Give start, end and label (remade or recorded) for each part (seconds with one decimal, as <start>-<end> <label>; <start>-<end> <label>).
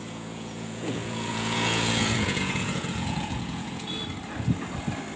0.0-4.0 remade; 4.0-5.2 recorded